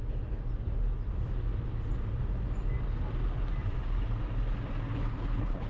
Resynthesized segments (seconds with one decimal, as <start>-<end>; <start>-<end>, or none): 4.9-5.7